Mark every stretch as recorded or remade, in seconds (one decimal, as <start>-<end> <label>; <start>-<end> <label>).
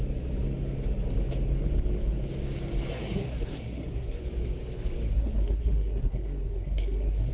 0.0-2.9 recorded; 2.9-4.2 remade; 4.2-5.1 recorded; 5.1-7.3 remade